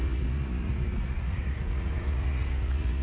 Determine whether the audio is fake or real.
fake